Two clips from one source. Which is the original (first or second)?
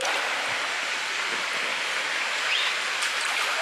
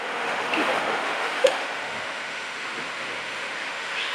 first